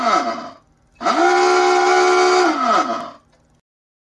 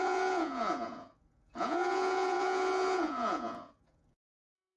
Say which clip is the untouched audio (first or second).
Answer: first